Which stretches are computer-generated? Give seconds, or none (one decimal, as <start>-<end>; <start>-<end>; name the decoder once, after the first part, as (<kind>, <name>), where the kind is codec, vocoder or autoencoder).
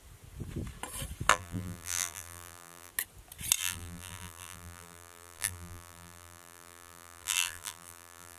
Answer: 1.3-2.9 (vocoder, BigVGAN v2); 3.6-8.4